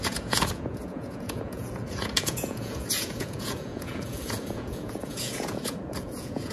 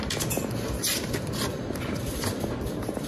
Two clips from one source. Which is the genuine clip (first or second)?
second